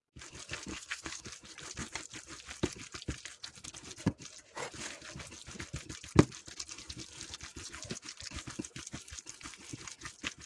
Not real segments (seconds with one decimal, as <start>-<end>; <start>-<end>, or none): 0.7-1.2